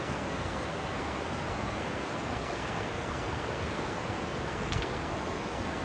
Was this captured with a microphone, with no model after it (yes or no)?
no